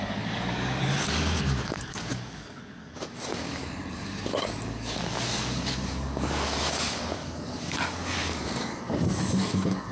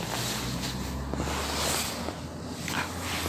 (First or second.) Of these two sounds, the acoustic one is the second